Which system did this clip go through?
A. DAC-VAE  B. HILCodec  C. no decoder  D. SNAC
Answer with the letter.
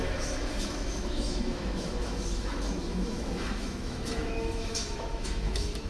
A